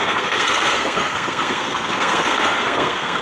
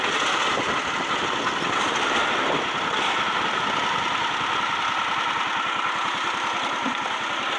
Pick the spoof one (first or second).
first